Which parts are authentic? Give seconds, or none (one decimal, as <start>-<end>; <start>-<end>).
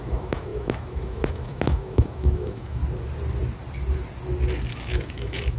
2.8-4.7